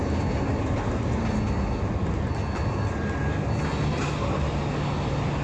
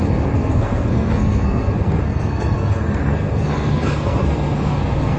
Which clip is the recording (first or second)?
first